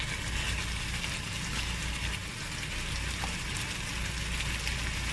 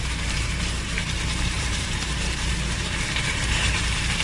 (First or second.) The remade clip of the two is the second